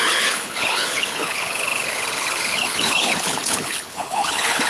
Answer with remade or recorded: remade